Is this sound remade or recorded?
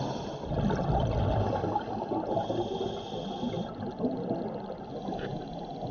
recorded